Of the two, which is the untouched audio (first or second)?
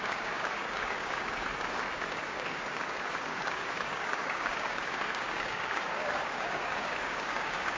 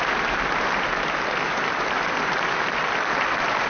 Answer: second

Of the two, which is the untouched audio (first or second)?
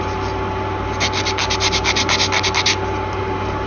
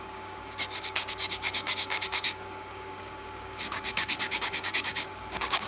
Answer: first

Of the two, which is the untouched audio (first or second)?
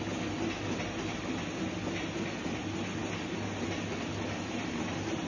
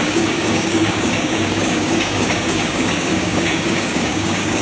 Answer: first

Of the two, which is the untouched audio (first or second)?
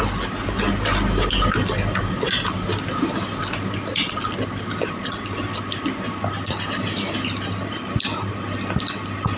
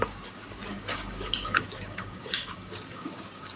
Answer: first